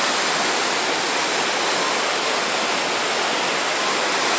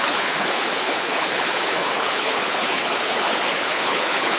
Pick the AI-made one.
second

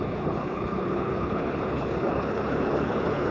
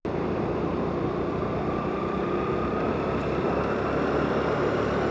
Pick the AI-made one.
first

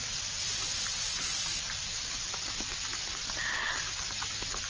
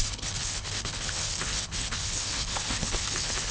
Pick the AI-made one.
second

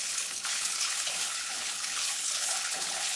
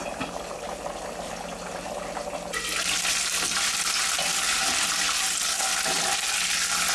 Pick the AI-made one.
first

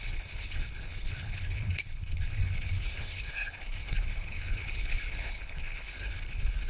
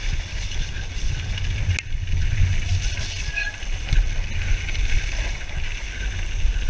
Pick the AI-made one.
first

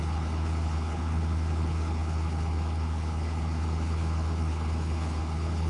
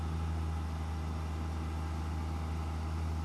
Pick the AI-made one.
first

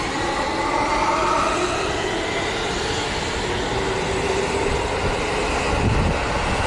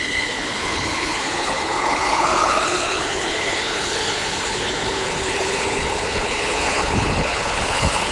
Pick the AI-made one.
second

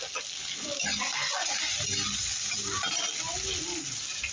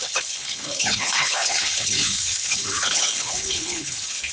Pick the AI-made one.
second